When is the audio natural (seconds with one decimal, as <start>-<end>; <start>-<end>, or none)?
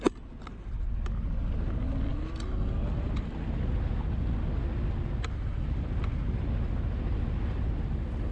0.0-8.3